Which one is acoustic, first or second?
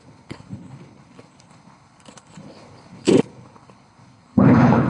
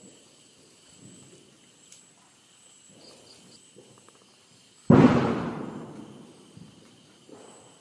second